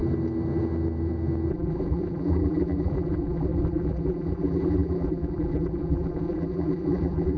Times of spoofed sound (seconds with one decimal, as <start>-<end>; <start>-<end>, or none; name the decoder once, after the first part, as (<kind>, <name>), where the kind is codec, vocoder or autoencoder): 1.5-7.4 (vocoder, BigVGAN v2)